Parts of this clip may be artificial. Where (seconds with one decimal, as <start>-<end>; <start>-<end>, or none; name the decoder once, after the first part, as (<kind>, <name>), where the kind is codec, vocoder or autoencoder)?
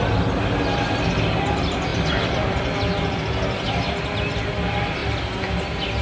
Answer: none